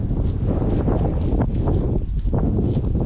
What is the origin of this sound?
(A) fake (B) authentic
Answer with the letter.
B